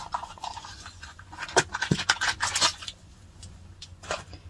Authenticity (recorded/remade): remade